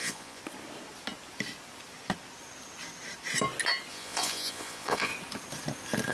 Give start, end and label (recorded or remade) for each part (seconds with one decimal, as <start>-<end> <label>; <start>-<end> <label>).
0.0-0.4 remade; 0.4-3.9 recorded; 3.9-5.1 remade; 5.1-6.1 recorded